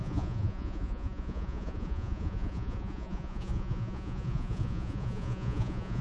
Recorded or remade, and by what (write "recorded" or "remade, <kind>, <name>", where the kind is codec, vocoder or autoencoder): remade, vocoder, Vocos